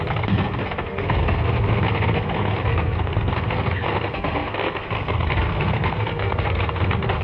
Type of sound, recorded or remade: remade